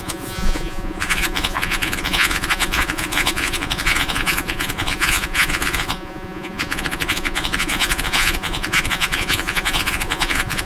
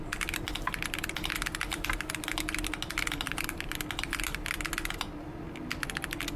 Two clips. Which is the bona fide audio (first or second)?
second